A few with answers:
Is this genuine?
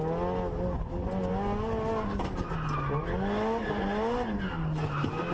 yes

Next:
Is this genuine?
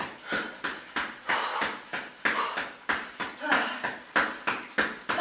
yes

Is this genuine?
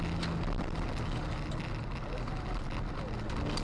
yes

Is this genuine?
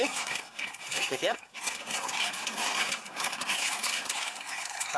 no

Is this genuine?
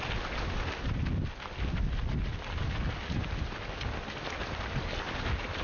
yes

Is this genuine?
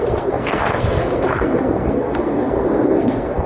no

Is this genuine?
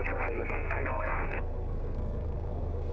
no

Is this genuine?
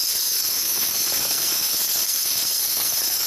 no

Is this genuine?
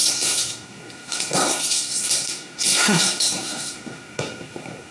no